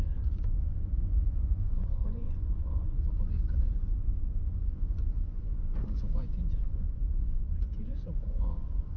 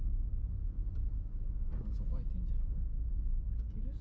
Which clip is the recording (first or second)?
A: second